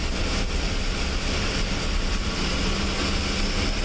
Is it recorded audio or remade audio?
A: recorded